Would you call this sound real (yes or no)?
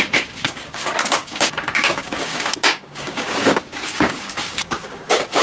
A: no